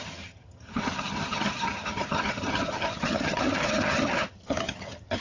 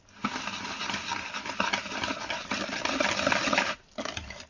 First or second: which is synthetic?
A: first